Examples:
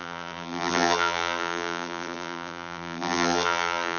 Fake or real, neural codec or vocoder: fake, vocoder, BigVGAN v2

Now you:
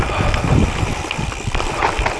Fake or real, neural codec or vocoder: real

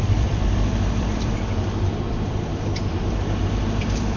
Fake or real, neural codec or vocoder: fake, vocoder, BigVGAN v2